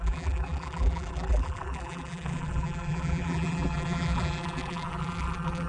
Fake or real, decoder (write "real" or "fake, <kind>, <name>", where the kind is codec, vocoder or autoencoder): fake, vocoder, BigVGAN v2